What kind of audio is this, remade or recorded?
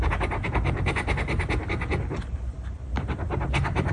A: recorded